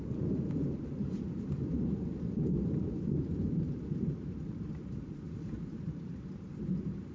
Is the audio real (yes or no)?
no